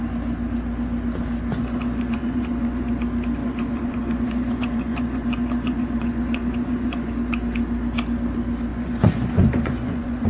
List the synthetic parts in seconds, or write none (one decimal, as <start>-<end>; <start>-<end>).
1.5-3.0; 3.4-7.1; 8.7-10.3